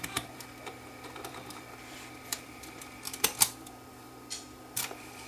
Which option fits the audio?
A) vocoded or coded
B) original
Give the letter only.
A